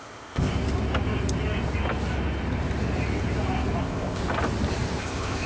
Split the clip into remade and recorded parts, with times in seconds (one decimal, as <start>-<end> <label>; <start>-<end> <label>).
0.0-0.5 remade; 0.5-3.8 recorded; 3.8-4.2 remade; 4.2-5.0 recorded; 5.0-5.5 remade